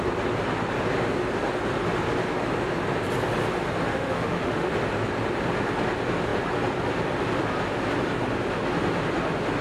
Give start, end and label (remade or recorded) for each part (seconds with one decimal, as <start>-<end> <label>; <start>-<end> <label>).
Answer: 0.0-3.9 recorded; 3.9-4.7 remade; 4.7-9.6 recorded